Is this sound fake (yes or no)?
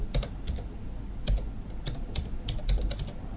no